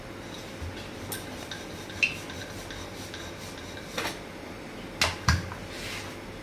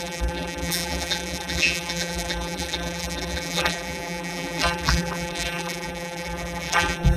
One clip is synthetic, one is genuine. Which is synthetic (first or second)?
second